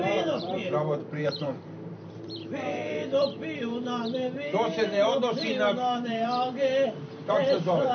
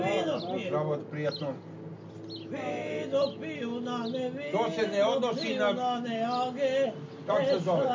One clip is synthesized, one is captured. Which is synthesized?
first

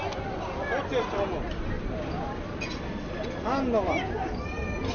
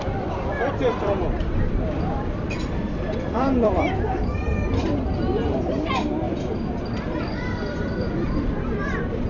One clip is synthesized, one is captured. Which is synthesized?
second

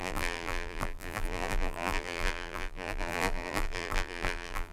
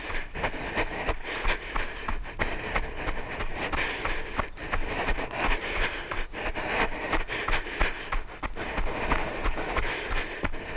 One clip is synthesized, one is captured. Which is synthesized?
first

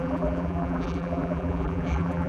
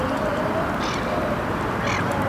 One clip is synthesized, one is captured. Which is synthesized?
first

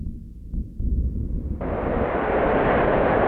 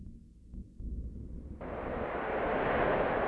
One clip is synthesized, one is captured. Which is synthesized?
first